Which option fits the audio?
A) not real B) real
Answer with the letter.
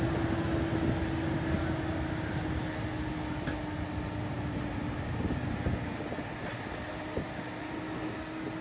B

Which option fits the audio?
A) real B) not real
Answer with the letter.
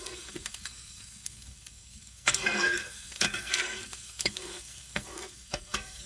B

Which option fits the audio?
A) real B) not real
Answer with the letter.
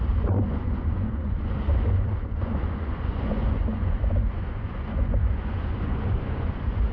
B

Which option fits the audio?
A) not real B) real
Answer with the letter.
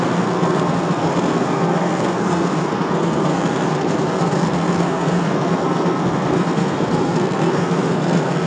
A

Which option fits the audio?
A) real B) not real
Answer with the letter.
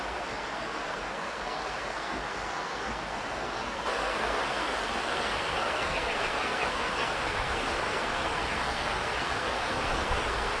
B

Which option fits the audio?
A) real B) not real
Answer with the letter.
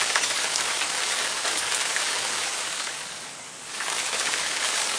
B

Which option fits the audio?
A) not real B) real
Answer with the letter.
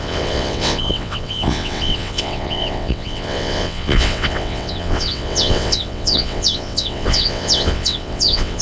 A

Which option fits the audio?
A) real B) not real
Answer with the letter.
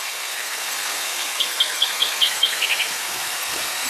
B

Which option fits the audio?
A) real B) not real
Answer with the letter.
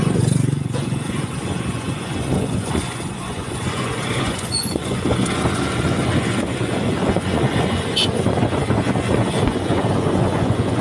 B